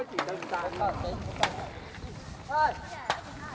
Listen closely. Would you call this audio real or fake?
real